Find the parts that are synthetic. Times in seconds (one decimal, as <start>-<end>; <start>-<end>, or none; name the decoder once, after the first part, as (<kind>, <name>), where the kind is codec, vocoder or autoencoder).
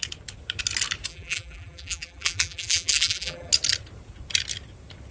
1.1-3.5 (vocoder, BigVGAN v2)